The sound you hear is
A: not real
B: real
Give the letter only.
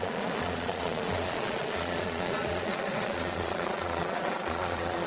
A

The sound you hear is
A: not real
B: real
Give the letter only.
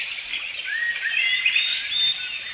B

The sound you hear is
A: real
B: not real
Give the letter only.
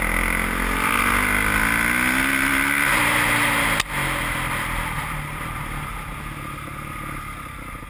A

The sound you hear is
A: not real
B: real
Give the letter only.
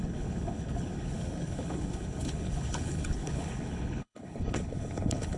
A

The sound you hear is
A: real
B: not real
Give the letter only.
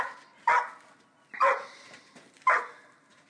A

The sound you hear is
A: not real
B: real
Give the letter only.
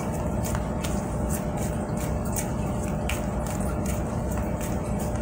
B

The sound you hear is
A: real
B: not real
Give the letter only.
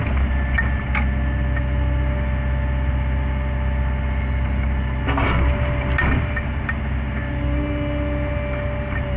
A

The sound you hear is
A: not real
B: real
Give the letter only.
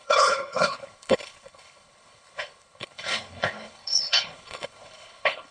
A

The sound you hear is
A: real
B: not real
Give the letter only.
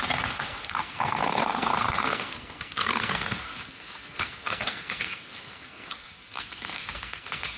B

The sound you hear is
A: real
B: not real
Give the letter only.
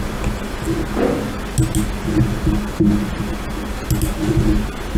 A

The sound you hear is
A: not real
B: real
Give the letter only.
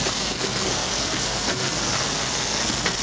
A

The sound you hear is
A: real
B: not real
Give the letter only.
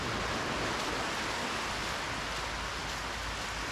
A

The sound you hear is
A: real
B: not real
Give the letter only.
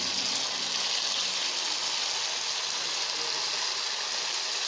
A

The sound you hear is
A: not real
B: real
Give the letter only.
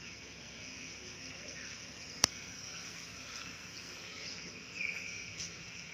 A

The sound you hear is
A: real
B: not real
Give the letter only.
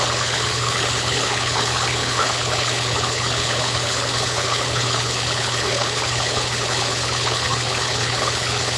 B